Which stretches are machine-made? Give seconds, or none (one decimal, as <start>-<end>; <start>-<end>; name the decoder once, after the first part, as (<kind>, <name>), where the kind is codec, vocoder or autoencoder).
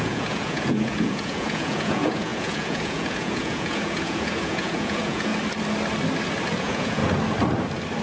0.0-5.3 (vocoder, Vocos); 6.6-7.0